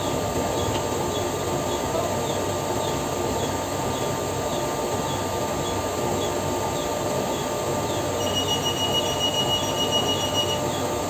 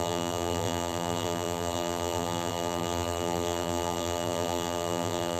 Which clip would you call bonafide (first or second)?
first